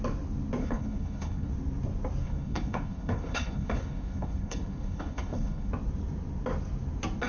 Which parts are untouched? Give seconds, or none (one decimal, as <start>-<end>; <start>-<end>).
0.0-0.6; 1.5-2.2; 5.7-7.3